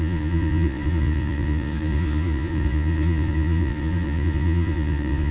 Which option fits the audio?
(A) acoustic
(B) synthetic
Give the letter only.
B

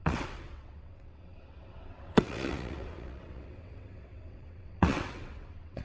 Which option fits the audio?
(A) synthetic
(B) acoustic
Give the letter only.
A